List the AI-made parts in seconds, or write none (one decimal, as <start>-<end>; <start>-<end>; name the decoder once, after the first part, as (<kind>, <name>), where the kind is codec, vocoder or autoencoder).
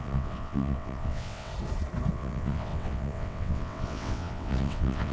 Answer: 0.0-1.5 (vocoder, WaveNeXt); 2.1-5.1